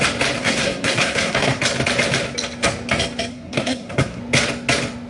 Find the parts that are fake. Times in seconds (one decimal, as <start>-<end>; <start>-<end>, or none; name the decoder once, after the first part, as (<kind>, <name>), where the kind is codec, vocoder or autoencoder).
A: 0.4-1.6 (codec, SNAC); 3.3-4.2